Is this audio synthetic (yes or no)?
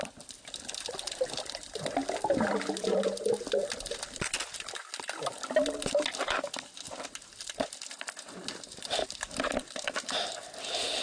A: no